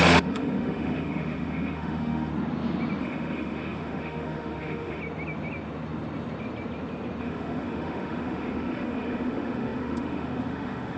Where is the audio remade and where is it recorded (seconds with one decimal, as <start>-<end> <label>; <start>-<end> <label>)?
0.0-2.3 remade; 2.3-3.0 recorded; 3.0-5.0 remade; 5.0-7.2 recorded; 7.2-11.0 remade